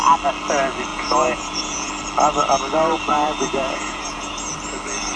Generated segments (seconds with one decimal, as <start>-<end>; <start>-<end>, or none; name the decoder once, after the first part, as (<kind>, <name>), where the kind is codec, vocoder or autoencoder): 0.9-1.9 (vocoder, Vocos); 3.1-4.5